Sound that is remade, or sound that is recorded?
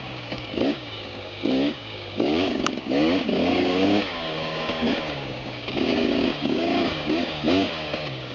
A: remade